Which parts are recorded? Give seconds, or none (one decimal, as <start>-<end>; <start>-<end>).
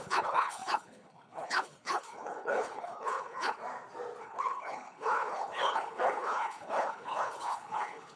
3.6-4.2